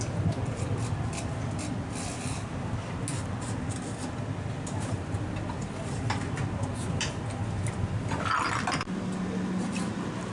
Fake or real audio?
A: real